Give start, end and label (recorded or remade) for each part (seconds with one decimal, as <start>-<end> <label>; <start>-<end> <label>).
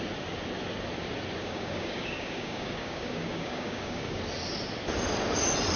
0.0-1.4 recorded; 1.4-4.2 remade; 4.2-5.8 recorded